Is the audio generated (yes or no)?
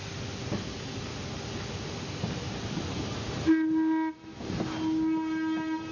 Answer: no